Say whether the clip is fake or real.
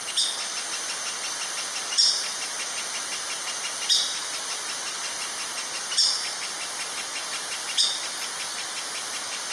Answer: real